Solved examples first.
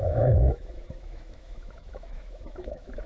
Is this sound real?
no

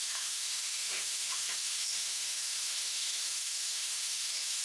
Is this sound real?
no